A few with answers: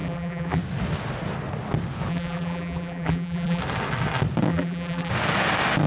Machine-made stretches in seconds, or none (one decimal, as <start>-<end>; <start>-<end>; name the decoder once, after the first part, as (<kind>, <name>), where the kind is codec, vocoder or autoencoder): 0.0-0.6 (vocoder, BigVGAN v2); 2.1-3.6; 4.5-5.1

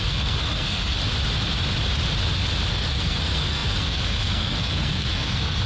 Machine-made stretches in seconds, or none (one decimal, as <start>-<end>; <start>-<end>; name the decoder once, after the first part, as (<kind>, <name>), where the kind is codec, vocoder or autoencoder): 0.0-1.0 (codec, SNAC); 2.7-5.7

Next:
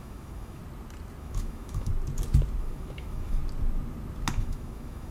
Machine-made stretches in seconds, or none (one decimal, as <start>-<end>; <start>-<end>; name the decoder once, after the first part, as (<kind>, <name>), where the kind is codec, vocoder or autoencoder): 0.0-0.6 (autoencoder, DAC-VAE); 1.2-1.9; 2.6-3.4; 4.3-5.1